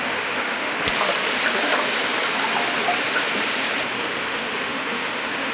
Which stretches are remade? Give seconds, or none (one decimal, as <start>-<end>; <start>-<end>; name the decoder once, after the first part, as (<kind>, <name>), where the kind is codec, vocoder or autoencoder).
0.0-0.7 (autoencoder, DAC-VAE); 4.0-5.5

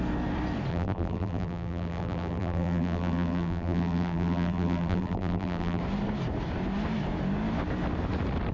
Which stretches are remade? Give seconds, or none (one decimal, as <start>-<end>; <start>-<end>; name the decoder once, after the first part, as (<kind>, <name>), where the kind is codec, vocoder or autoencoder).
0.7-5.8 (vocoder, BigVGAN v2)